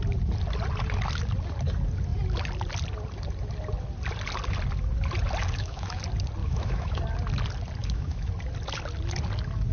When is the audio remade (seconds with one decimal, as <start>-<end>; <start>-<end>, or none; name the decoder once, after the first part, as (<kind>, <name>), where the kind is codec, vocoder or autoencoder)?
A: 5.4-6.0 (autoencoder, DAC-VAE); 6.4-7.0; 7.8-8.3